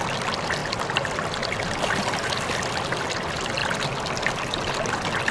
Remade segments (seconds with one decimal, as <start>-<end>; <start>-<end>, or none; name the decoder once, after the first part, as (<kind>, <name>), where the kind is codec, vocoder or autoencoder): none